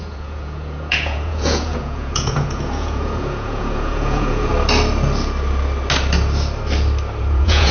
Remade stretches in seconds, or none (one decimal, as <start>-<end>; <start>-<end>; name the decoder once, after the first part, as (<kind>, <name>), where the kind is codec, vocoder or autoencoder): 0.0-4.5 (vocoder, Vocos); 7.2-7.7